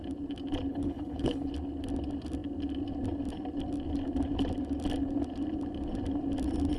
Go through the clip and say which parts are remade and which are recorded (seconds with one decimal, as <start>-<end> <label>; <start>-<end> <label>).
0.0-0.7 recorded; 0.7-1.5 remade; 1.5-6.8 recorded